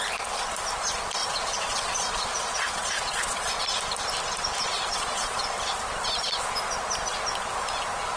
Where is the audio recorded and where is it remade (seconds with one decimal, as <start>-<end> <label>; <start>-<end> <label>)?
0.0-1.2 recorded; 1.2-3.5 remade; 3.5-4.6 recorded; 4.6-5.4 remade; 5.4-8.2 recorded